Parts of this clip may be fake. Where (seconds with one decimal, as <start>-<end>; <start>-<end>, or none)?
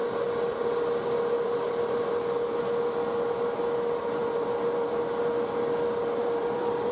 4.2-5.1; 6.2-6.9